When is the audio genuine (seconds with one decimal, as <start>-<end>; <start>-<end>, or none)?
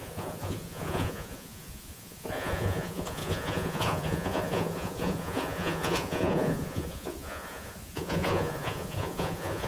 none